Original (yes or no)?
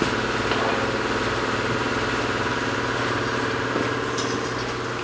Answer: yes